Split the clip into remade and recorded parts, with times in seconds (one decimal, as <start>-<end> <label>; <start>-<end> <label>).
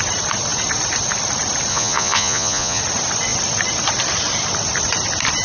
0.0-1.7 recorded; 1.7-2.8 remade; 2.8-5.4 recorded